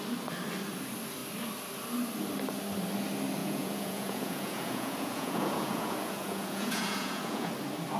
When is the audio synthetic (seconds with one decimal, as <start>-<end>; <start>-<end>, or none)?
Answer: 3.4-7.5